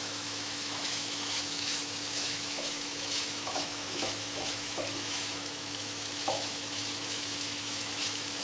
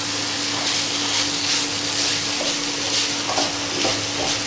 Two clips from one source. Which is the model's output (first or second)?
first